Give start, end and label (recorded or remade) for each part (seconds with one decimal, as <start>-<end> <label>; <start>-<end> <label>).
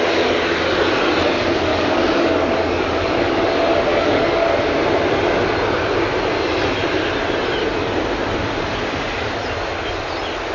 0.0-1.7 recorded; 1.7-3.3 remade; 3.3-3.9 recorded; 3.9-4.6 remade; 4.6-10.5 recorded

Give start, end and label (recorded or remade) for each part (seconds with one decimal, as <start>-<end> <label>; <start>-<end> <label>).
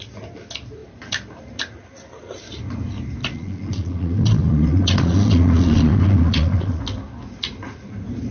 0.0-3.2 recorded; 3.2-6.8 remade; 6.8-8.3 recorded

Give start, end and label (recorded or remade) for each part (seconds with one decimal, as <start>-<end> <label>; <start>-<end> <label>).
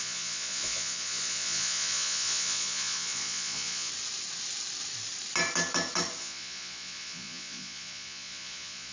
0.0-3.9 remade; 3.9-6.2 recorded; 6.2-8.9 remade